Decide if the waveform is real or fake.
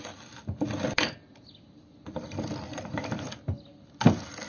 real